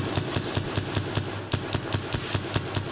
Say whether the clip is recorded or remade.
recorded